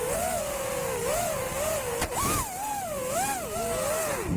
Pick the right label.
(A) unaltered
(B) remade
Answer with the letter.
A